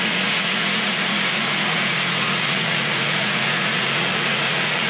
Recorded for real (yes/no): no